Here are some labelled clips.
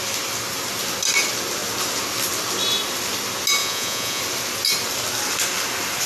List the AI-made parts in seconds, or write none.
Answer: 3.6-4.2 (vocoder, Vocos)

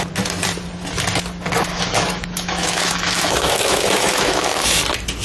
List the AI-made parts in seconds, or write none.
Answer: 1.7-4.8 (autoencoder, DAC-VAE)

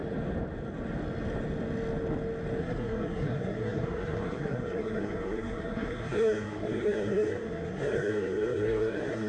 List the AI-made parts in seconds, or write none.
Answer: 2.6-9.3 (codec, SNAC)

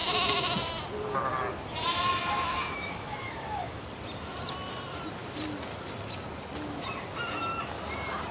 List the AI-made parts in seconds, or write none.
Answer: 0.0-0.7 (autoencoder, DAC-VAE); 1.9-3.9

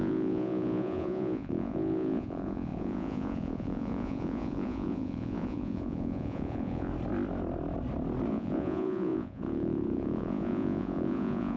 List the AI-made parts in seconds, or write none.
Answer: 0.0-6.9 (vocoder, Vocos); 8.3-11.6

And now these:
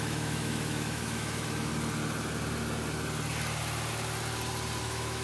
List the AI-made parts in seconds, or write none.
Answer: 0.0-1.7 (autoencoder, DAC-VAE); 4.8-5.2